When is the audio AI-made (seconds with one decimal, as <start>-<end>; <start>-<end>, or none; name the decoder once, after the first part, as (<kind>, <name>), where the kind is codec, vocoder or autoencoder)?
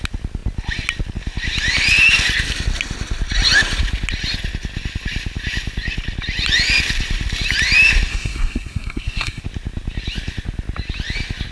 8.1-9.4 (codec, SNAC)